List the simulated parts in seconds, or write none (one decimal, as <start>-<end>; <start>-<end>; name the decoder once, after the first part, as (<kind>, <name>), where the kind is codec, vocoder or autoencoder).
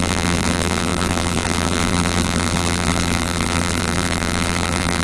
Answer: 0.0-5.0 (vocoder, BigVGAN v2)